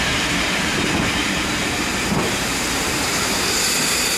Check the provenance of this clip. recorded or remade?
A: remade